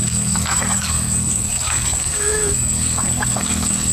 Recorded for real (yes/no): no